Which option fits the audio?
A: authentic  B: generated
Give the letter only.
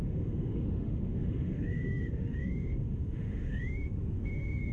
B